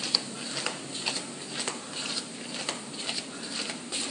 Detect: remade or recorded recorded